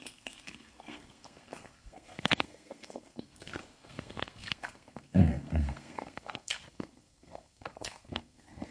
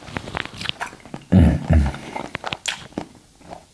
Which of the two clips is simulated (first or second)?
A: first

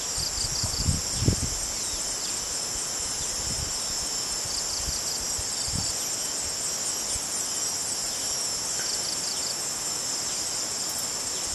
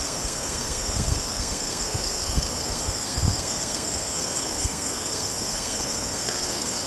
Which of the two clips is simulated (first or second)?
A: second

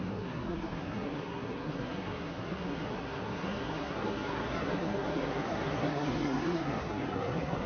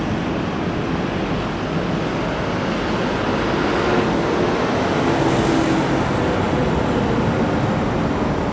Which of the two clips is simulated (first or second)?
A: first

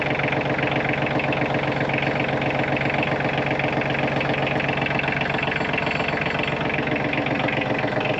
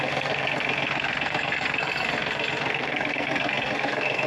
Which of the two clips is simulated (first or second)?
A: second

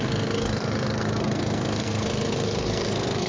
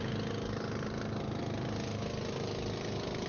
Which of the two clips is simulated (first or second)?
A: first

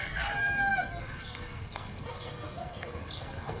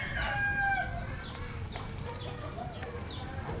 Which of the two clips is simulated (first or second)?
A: first